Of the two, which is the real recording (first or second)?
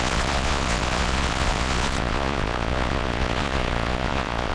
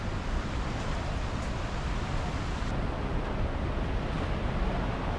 second